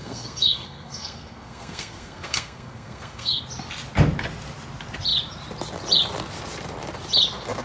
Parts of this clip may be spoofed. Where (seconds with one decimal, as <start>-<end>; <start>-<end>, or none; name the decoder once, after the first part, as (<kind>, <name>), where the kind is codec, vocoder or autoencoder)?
0.0-3.4 (codec, SNAC)